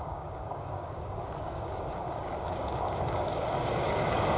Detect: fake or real fake